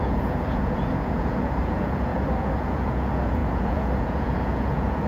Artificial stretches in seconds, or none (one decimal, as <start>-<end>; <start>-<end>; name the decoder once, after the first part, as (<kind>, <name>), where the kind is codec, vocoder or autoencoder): 0.0-5.1 (vocoder, Vocos)